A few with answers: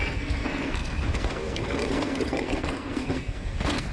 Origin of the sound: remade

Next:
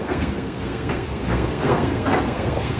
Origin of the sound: remade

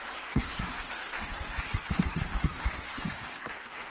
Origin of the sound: remade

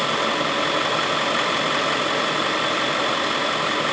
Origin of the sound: recorded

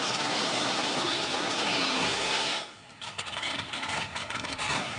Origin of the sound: remade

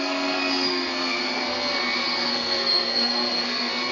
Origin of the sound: remade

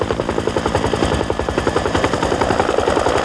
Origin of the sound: recorded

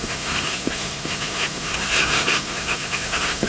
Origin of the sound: remade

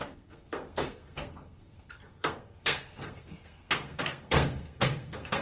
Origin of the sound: remade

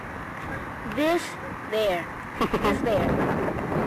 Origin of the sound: recorded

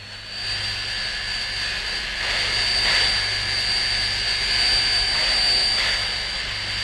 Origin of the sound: recorded